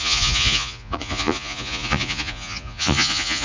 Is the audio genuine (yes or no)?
no